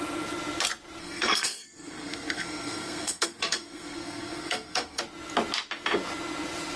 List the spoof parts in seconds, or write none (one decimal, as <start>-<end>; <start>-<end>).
1.0-5.0